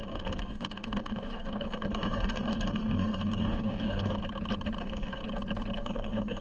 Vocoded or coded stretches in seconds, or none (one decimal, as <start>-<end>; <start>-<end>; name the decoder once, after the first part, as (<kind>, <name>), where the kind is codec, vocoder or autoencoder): 0.0-4.2 (codec, DAC); 4.8-5.2; 5.8-6.4